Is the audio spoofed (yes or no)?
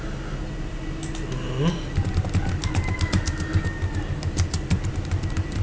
no